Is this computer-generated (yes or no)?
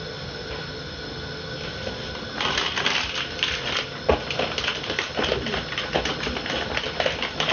no